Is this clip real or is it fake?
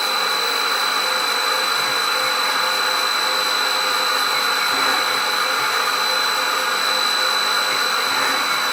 real